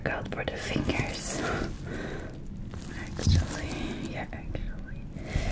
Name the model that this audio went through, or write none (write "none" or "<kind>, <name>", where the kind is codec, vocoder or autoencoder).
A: none